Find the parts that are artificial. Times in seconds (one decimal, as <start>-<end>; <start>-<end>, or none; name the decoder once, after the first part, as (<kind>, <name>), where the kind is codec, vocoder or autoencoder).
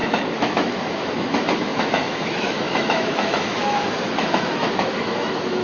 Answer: 0.0-5.6 (autoencoder, DAC-VAE)